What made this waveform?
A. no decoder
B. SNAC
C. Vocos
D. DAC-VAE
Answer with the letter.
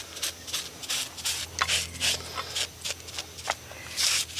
A